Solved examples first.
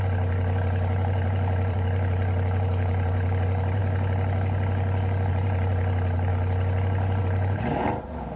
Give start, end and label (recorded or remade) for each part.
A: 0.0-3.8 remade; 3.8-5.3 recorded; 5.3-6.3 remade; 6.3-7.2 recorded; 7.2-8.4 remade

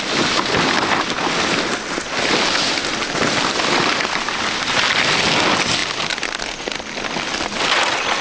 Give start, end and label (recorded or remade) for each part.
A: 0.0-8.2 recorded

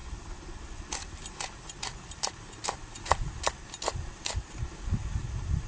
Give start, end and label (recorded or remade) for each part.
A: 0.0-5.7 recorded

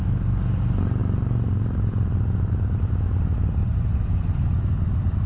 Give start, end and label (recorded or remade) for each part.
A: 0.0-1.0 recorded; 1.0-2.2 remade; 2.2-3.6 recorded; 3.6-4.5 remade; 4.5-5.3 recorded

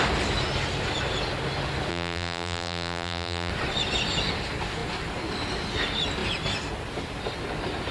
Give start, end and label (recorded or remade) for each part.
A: 0.0-1.9 recorded; 1.9-3.5 remade; 3.5-7.9 recorded

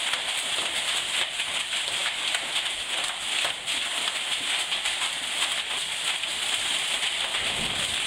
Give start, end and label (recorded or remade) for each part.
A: 0.0-8.1 recorded

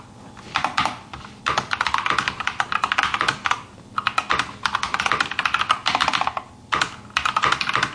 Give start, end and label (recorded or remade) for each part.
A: 0.0-1.0 recorded; 1.0-1.8 remade; 1.8-7.9 recorded

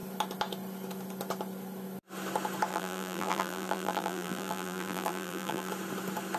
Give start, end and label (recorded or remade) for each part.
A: 0.0-2.7 recorded; 2.7-5.7 remade; 5.7-6.4 recorded